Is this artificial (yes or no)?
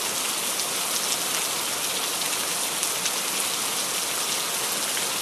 no